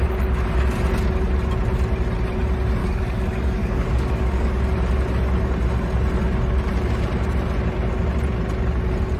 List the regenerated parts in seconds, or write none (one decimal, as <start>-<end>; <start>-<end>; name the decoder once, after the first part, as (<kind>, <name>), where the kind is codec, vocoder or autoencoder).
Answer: 2.8-4.6 (codec, DAC)